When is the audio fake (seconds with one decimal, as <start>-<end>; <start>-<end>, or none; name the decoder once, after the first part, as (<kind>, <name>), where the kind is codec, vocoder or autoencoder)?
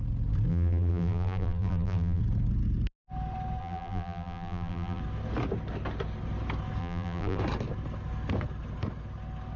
0.5-2.2 (vocoder, BigVGAN v2); 3.6-5.0; 6.8-7.4